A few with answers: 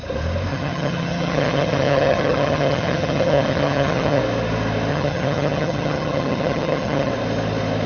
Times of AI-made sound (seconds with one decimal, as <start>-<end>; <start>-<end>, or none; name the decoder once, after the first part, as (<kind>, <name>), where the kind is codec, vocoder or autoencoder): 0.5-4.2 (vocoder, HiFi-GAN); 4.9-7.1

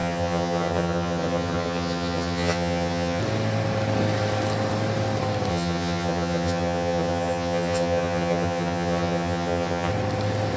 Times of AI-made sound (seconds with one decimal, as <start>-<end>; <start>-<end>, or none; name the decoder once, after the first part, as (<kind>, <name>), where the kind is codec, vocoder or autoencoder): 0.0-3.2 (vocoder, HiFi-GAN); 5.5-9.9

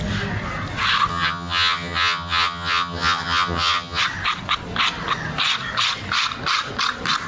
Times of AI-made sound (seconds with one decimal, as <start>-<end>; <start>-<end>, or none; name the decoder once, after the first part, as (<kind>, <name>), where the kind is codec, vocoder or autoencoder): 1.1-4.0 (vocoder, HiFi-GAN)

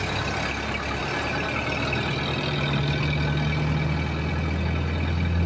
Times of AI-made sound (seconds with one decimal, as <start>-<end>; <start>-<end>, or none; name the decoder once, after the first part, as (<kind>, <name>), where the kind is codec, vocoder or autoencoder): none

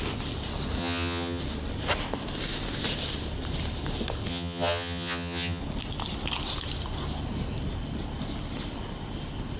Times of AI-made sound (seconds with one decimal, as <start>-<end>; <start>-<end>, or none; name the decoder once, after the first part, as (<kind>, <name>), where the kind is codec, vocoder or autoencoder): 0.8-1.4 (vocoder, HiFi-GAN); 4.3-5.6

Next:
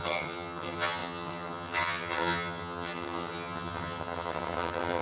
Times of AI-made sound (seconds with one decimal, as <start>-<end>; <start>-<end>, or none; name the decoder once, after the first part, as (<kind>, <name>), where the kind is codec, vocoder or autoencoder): 0.0-5.0 (vocoder, HiFi-GAN)